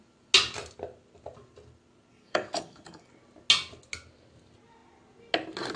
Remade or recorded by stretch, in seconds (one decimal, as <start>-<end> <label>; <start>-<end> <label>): 0.0-2.1 recorded; 2.1-3.1 remade; 3.1-5.8 recorded